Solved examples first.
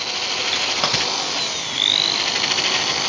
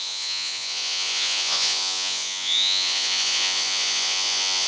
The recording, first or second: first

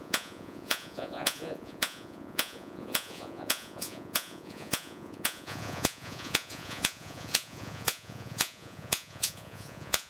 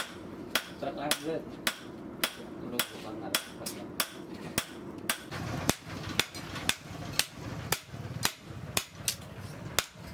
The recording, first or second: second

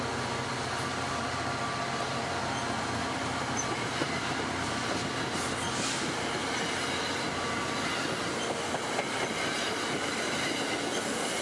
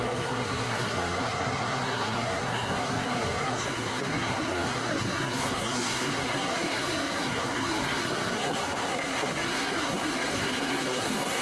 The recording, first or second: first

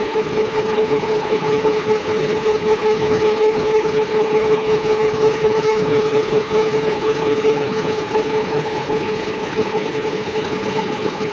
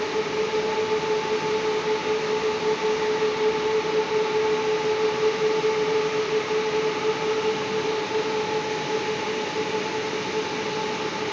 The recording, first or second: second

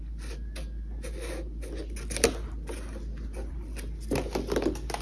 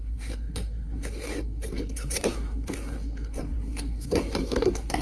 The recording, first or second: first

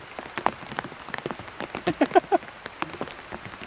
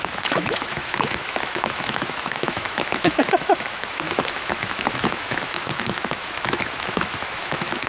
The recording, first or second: first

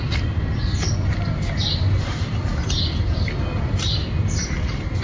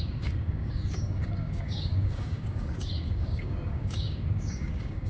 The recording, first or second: first